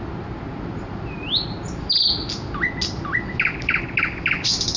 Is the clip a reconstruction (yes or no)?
no